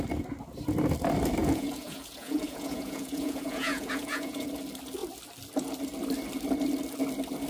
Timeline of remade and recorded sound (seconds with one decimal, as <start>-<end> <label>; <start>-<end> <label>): 0.0-1.4 recorded; 1.4-4.5 remade; 4.5-7.5 recorded